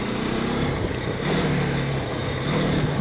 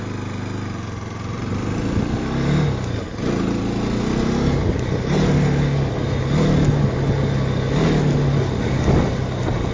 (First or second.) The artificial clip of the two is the first